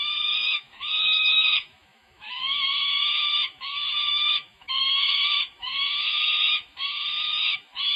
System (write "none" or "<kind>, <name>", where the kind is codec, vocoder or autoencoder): autoencoder, DAC-VAE